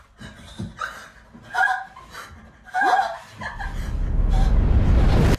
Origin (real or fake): real